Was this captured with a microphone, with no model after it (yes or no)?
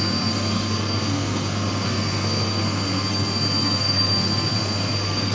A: no